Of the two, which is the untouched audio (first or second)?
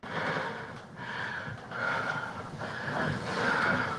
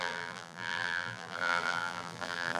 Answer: first